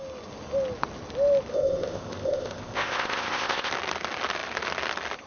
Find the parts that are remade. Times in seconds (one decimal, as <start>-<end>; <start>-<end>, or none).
1.5-3.7